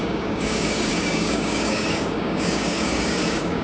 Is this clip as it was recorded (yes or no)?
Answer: no